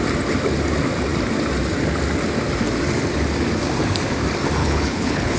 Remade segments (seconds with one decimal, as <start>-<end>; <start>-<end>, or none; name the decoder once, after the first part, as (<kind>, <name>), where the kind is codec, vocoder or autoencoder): 4.6-5.4 (codec, HILCodec)